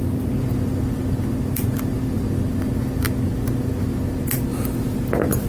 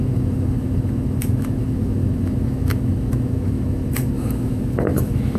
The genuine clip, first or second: first